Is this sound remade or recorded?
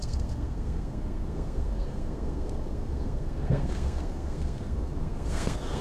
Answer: remade